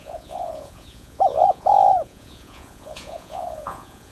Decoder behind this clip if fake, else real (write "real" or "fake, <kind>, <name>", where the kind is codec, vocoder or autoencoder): fake, vocoder, Vocos